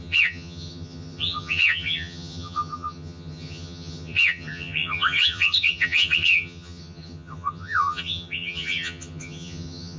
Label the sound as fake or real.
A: fake